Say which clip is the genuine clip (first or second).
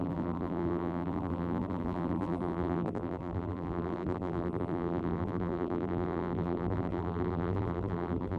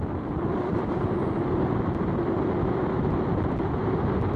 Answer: second